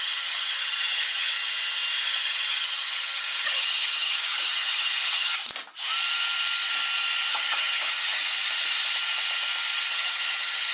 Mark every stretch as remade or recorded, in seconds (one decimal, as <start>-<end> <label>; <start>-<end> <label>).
0.0-1.4 remade; 1.4-2.0 recorded; 2.0-5.4 remade; 5.4-7.3 recorded; 7.3-8.2 remade; 8.2-9.9 recorded; 9.9-10.7 remade